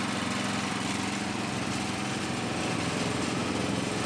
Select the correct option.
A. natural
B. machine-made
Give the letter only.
A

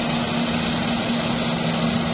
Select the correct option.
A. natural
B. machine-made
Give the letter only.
A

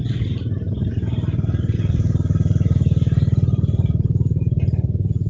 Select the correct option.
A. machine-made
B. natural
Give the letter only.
A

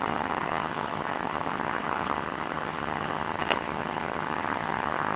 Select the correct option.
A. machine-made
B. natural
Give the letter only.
A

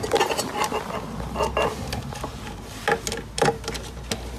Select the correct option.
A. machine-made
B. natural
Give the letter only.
B